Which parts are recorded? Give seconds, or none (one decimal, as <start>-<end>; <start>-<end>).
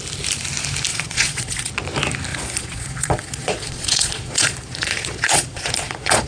0.0-0.9; 1.7-2.3